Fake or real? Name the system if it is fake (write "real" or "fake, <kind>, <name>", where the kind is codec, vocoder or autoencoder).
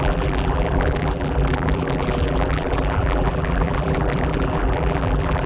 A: fake, vocoder, BigVGAN v2